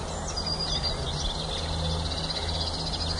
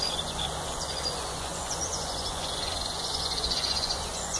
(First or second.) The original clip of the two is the first